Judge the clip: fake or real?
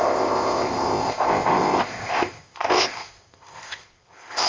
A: fake